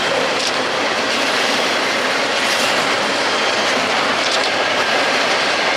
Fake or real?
fake